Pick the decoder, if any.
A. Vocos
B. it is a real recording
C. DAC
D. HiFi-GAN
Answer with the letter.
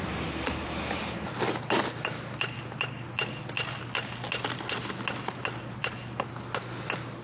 B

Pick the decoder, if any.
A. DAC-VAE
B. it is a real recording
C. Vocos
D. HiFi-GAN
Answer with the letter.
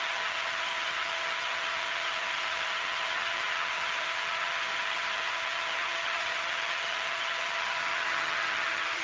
D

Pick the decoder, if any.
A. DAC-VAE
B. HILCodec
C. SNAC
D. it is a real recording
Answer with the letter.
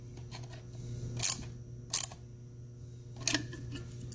D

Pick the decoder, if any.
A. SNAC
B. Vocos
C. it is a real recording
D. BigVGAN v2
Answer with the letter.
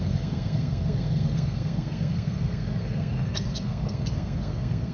A